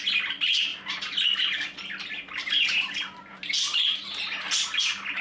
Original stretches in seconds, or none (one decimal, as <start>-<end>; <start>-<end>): 0.0-5.2